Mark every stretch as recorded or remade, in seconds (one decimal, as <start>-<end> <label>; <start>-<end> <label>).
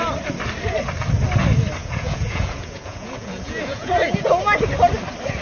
0.0-1.8 recorded; 1.8-4.3 remade; 4.3-5.4 recorded